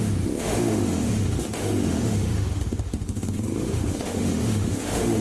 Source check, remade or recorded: remade